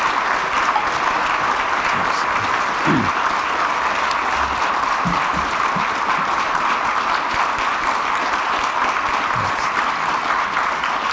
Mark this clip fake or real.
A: real